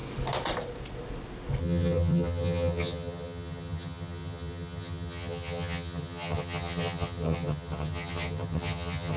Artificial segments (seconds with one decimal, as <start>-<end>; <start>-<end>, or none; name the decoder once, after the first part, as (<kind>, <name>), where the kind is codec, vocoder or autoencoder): 1.6-9.2 (vocoder, HiFi-GAN)